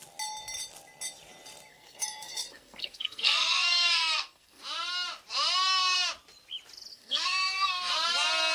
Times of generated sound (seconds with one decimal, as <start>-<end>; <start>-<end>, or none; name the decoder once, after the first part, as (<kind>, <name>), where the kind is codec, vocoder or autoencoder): 1.7-4.6 (codec, SNAC); 6.9-7.9

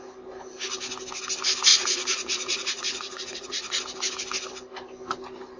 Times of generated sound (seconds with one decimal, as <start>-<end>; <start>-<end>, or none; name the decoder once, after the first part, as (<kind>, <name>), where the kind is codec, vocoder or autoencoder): 1.7-3.8 (vocoder, Vocos)